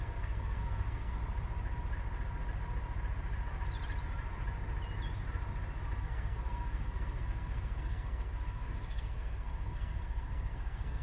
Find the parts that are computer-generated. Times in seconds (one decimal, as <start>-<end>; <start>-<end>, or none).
0.0-1.2; 6.0-11.0

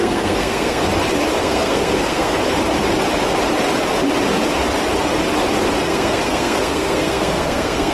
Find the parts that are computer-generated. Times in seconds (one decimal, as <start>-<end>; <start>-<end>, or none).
0.0-0.8; 1.4-2.4; 5.8-7.9

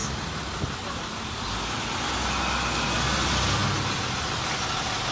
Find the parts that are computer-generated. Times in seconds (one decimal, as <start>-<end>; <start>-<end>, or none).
none

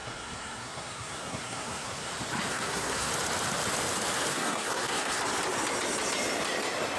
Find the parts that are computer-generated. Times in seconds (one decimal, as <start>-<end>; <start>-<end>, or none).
0.0-2.1; 2.5-3.1; 4.3-5.2

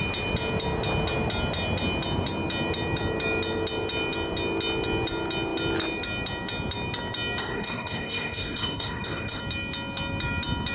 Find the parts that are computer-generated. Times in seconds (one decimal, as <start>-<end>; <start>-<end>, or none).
7.4-9.4

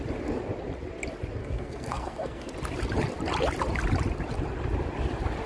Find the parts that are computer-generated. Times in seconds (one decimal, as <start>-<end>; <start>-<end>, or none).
1.4-2.5